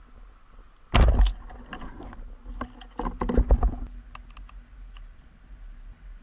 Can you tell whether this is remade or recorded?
recorded